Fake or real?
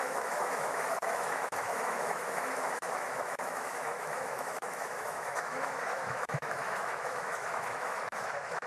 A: fake